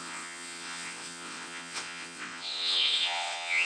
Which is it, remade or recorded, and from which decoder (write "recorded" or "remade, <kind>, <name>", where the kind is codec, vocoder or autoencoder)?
remade, vocoder, WaveNeXt